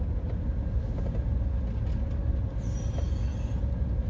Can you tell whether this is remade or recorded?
recorded